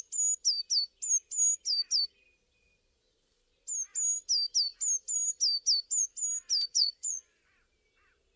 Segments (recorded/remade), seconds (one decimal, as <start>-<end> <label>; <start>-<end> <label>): 0.0-6.7 recorded; 6.7-7.5 remade; 7.5-8.4 recorded